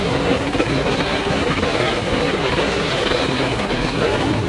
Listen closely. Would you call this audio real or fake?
fake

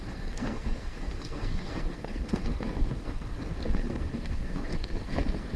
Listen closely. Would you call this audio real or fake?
fake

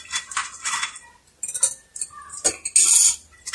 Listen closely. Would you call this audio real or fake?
real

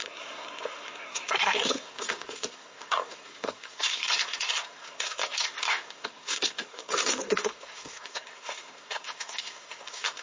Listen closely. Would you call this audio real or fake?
fake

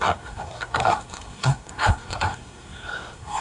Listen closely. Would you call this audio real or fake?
fake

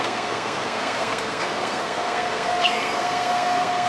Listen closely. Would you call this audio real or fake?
fake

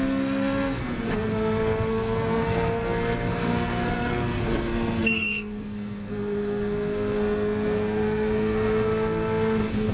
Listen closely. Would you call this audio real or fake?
fake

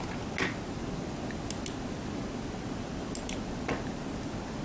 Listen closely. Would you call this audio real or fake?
real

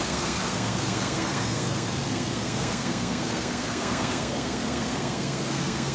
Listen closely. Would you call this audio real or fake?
fake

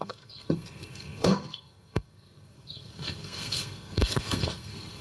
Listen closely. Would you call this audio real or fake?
fake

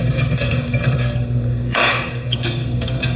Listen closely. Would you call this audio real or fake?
fake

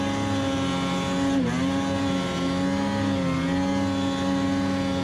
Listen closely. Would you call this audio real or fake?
real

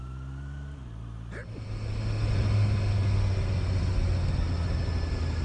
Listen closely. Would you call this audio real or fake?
real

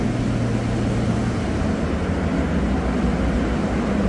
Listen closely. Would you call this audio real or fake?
real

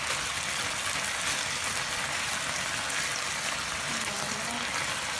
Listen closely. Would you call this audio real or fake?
real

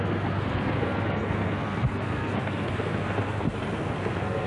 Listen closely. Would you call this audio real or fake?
fake